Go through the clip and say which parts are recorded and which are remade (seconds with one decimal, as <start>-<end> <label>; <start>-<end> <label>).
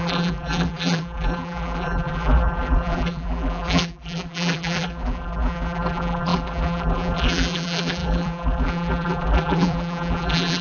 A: 0.0-10.6 remade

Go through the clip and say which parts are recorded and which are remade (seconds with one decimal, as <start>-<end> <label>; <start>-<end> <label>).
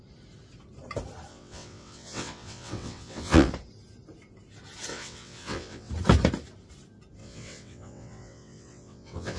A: 0.0-1.3 recorded; 1.3-3.5 remade; 3.5-4.9 recorded; 4.9-5.9 remade; 5.9-7.2 recorded; 7.2-9.4 remade